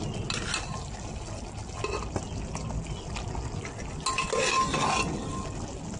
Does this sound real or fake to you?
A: real